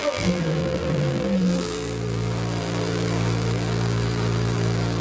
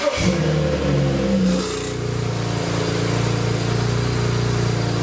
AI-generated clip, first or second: first